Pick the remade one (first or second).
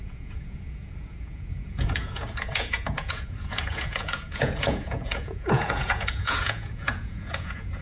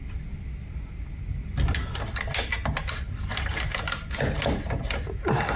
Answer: first